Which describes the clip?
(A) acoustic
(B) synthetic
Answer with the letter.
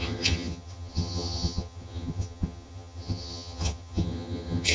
B